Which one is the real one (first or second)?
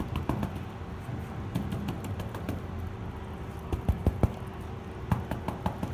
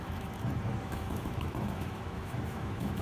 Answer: first